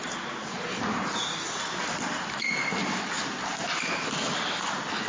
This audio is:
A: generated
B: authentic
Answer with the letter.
B